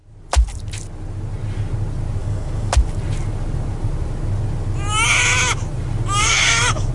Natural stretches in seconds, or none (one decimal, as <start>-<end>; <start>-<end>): 0.0-2.2; 2.7-6.2